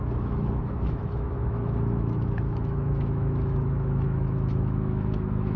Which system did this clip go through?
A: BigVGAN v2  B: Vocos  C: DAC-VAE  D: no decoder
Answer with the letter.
C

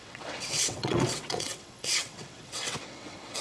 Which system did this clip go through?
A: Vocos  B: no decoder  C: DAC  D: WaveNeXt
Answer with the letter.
D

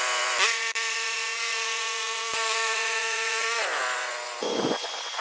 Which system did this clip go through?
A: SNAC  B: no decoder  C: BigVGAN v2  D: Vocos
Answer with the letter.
D